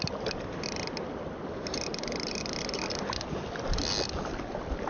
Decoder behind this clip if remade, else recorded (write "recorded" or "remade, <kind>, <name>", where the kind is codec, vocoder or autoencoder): recorded